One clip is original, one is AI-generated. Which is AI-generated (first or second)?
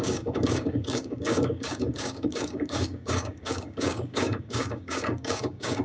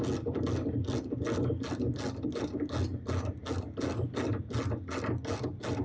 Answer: first